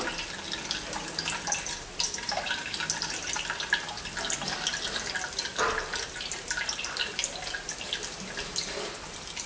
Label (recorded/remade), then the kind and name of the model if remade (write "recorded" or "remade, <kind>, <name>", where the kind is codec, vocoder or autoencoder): recorded